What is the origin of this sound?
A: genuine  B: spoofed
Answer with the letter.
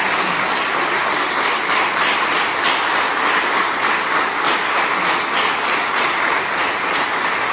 A